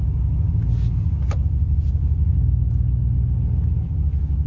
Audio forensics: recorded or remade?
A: recorded